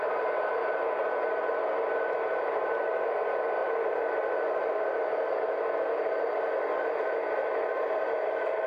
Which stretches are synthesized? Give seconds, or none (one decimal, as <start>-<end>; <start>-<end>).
none

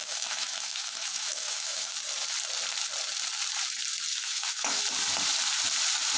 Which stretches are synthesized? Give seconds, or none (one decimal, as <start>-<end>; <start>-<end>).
0.0-1.9; 4.1-4.8

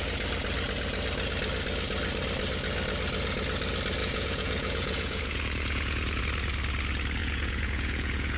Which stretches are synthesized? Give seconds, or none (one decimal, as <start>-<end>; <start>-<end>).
4.0-6.2; 7.2-8.4

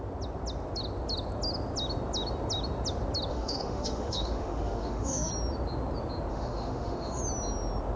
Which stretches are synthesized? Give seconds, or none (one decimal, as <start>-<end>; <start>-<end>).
3.3-5.3; 6.3-7.2

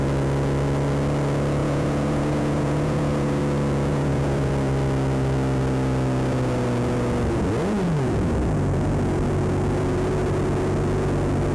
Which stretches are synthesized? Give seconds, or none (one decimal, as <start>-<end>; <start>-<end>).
1.6-3.4; 3.9-4.5

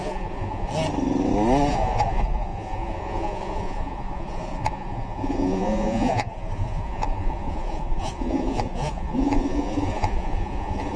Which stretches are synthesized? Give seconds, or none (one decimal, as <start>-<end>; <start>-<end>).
0.0-0.7; 1.7-11.0

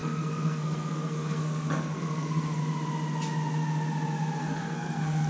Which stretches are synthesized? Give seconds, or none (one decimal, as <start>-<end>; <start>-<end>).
0.0-2.6; 4.4-5.3

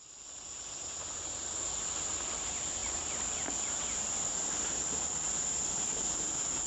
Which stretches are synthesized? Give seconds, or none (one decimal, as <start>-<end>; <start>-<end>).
none